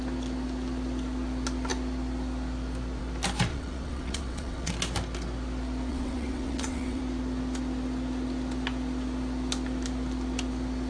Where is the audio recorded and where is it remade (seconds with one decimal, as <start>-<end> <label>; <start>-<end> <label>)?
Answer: 0.0-3.5 recorded; 3.5-4.7 remade; 4.7-5.9 recorded; 5.9-7.0 remade; 7.0-10.9 recorded